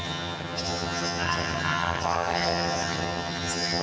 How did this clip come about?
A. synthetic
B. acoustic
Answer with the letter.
A